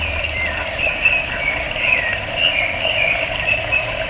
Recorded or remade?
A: remade